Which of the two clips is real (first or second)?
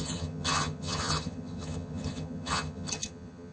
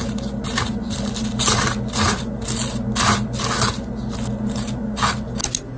second